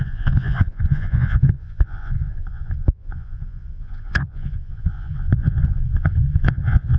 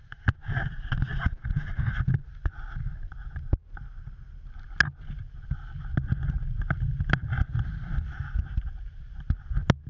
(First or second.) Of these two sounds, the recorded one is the second